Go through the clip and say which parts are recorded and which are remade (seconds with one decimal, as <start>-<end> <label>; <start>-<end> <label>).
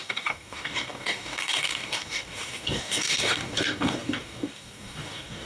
0.0-5.5 remade